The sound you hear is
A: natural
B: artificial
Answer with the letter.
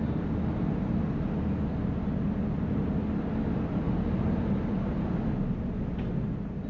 A